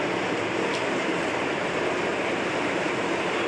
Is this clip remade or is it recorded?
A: remade